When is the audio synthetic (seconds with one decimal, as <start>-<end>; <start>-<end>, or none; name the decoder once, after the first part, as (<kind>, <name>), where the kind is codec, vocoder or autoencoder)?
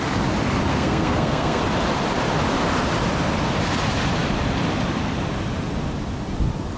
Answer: 0.7-1.6 (codec, SNAC)